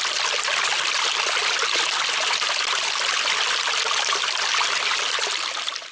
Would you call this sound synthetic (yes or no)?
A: no